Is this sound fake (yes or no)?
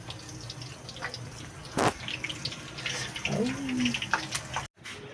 no